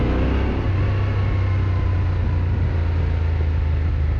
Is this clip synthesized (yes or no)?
no